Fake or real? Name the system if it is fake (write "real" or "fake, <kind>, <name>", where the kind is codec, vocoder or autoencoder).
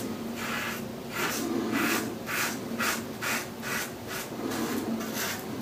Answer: real